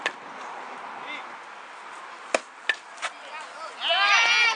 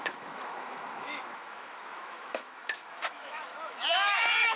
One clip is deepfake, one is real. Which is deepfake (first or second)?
second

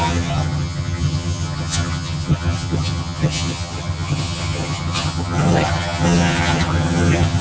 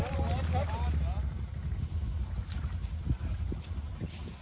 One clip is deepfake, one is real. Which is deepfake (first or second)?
first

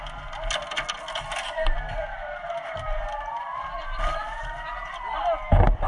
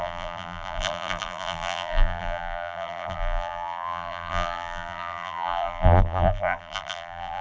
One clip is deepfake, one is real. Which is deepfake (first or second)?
second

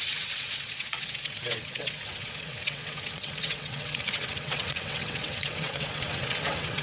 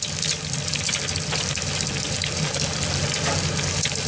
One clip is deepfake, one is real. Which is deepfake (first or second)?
first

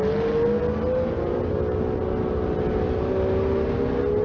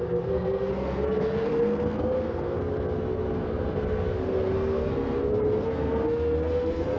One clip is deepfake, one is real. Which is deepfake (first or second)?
second